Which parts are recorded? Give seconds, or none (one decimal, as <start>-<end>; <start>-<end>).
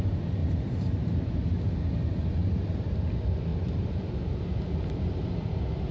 0.0-0.4; 1.4-2.4; 2.9-3.5; 4.4-5.9